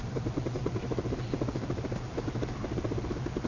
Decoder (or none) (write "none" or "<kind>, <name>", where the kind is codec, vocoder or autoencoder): none